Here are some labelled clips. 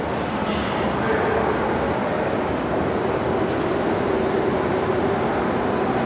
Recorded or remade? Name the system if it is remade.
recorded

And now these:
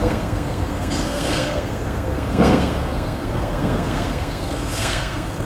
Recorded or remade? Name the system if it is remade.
remade, codec, SNAC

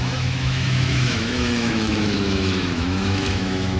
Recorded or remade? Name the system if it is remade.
remade, autoencoder, DAC-VAE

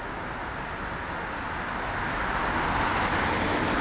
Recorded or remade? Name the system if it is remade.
recorded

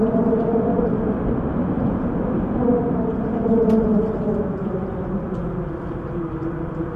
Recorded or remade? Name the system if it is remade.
recorded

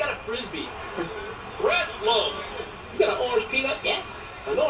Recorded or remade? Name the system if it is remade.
recorded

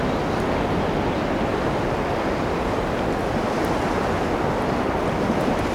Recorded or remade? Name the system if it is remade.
recorded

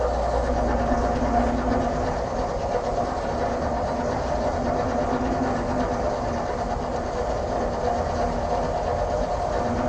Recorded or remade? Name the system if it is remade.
recorded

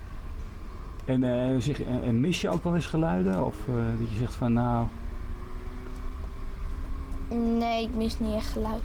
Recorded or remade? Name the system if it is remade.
recorded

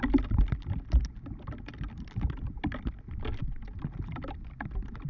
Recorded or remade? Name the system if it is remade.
recorded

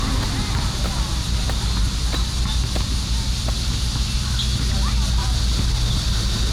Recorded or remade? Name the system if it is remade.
recorded